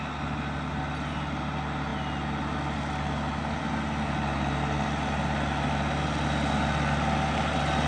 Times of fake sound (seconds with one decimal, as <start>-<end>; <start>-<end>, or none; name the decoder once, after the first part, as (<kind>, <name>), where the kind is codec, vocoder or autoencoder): none